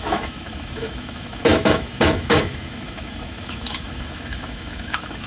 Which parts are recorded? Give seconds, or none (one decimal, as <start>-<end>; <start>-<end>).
none